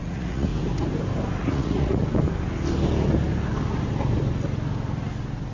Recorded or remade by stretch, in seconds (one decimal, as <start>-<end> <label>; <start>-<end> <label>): 0.0-0.5 remade; 0.5-1.4 recorded; 1.4-2.0 remade; 2.0-5.5 recorded